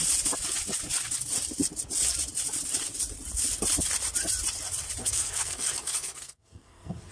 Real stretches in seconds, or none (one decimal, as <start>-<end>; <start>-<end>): 0.0-5.0

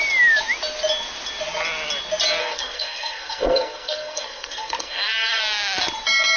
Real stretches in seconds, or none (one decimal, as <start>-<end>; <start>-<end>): 0.0-2.4; 5.4-6.4

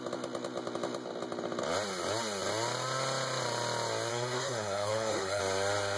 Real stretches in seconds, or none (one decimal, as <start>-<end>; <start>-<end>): 0.0-4.1; 5.4-6.0

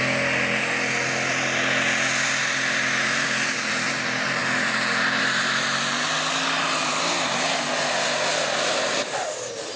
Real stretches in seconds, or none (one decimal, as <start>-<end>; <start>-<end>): 0.0-9.8

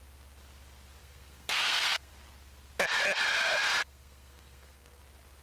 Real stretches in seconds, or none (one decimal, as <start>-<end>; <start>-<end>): 0.0-1.0; 2.1-3.8; 5.0-5.4

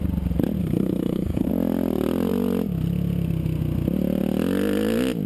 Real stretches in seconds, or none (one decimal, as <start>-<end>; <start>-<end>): 0.0-0.6; 1.5-5.3

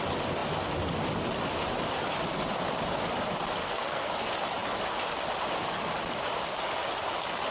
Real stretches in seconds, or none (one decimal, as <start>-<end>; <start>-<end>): 0.0-3.6; 4.1-7.5

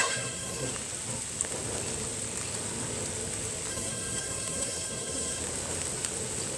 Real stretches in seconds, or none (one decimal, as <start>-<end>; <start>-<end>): 0.7-3.7; 5.4-6.6